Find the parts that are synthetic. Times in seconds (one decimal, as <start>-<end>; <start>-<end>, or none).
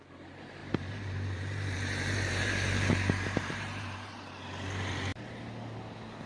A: 0.6-4.4